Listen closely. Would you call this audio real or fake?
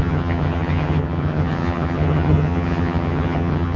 fake